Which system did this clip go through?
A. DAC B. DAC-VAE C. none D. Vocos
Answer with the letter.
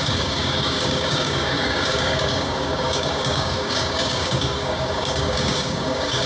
A